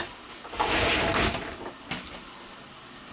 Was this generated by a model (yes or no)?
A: no